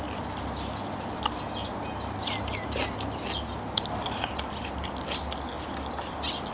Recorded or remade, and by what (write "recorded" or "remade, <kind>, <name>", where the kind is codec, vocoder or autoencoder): recorded